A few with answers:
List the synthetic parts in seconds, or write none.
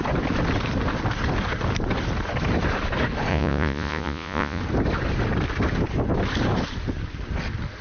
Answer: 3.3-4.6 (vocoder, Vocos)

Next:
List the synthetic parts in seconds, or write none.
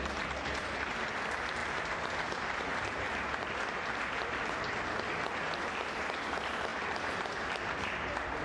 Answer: 0.0-8.4 (vocoder, BigVGAN v2)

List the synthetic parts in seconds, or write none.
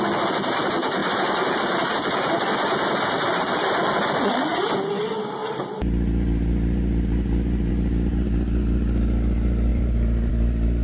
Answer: 1.0-2.4 (vocoder, BigVGAN v2); 5.4-7.7; 9.7-10.3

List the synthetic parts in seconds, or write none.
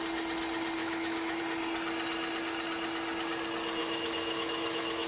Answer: 0.8-1.4 (autoencoder, DAC-VAE); 3.8-5.1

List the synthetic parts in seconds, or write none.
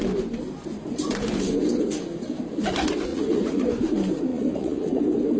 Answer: 3.1-3.7 (vocoder, Vocos); 4.3-5.0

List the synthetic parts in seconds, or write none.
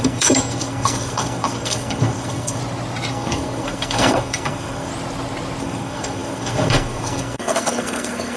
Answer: 0.0-2.6 (codec, SNAC); 3.1-4.9; 5.6-8.4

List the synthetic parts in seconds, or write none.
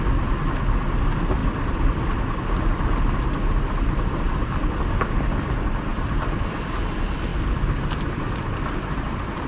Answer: 5.9-6.7 (vocoder, BigVGAN v2)